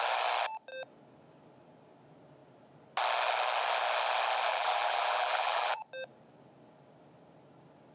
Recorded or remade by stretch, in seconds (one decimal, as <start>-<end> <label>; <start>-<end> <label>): 0.0-4.5 recorded; 4.5-5.8 remade; 5.8-7.9 recorded